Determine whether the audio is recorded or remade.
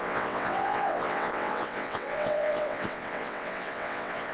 remade